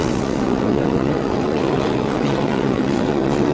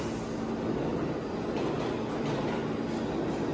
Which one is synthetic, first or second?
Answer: first